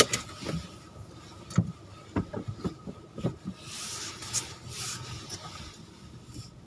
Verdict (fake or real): real